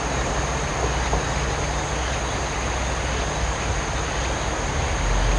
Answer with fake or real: real